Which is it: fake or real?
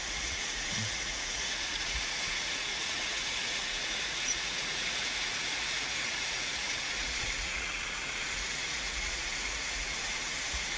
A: fake